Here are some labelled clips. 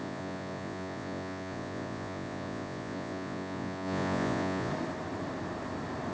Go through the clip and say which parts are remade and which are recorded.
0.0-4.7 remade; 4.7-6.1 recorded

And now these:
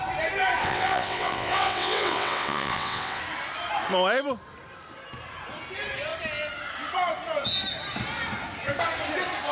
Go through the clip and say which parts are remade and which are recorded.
0.0-0.6 recorded; 0.6-3.2 remade; 3.2-9.5 recorded

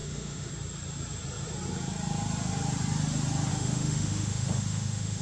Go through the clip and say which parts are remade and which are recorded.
0.0-0.5 remade; 0.5-3.5 recorded; 3.5-5.2 remade

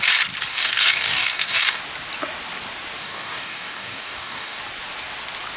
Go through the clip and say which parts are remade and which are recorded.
0.0-0.5 recorded; 0.5-1.8 remade; 1.8-3.0 recorded; 3.0-4.6 remade; 4.6-5.6 recorded

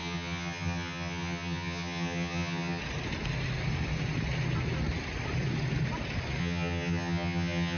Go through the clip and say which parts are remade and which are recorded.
0.0-2.8 remade; 2.8-6.4 recorded; 6.4-7.8 remade

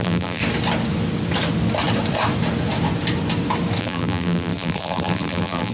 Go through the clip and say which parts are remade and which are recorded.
0.0-0.4 remade; 0.4-3.8 recorded; 3.8-5.7 remade

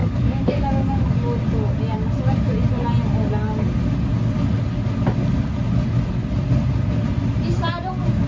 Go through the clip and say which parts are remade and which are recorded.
0.0-1.0 remade; 1.0-8.3 recorded